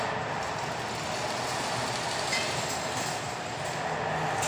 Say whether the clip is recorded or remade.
recorded